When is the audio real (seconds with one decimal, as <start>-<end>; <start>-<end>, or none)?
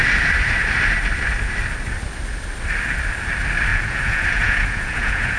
0.0-3.7